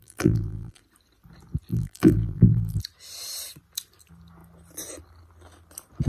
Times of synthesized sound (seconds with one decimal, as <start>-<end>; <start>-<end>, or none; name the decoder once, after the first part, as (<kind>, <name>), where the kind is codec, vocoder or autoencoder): 0.0-0.8 (vocoder, BigVGAN v2); 1.7-2.8